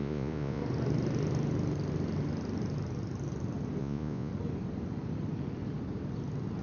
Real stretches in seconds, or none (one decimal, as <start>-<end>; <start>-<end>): 0.6-3.8; 4.3-6.6